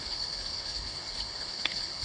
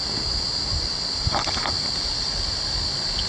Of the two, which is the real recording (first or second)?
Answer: second